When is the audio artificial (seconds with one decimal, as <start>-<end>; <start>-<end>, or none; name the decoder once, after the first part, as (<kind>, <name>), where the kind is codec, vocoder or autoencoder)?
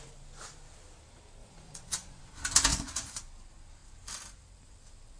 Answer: 1.4-2.2 (vocoder, Vocos); 2.7-3.2